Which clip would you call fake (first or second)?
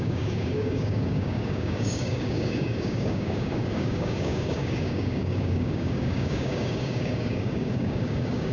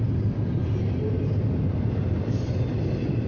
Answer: first